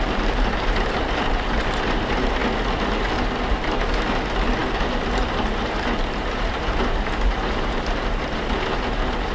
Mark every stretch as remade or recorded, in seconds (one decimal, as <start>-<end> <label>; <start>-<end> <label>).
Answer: 0.0-2.4 remade; 2.4-3.5 recorded; 3.5-9.3 remade